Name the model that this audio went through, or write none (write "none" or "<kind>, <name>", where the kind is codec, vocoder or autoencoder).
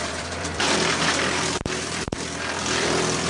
vocoder, BigVGAN v2